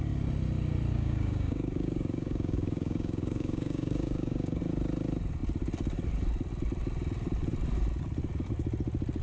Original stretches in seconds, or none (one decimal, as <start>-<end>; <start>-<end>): 0.0-0.9; 4.6-9.2